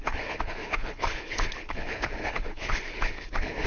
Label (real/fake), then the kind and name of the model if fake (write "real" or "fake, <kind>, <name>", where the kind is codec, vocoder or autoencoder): fake, codec, HILCodec